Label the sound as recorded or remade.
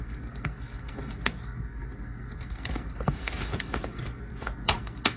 remade